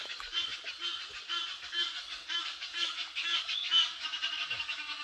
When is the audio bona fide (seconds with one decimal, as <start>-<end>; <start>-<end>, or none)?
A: 0.5-1.6; 4.1-4.6